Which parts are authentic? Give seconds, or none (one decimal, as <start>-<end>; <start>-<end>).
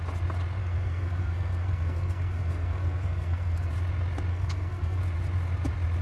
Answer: 0.0-0.6; 3.7-4.3; 5.0-6.0